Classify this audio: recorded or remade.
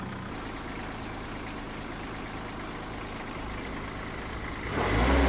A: recorded